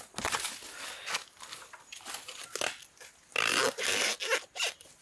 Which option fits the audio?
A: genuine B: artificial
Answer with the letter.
A